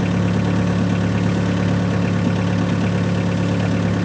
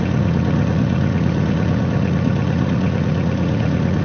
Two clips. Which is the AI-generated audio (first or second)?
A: second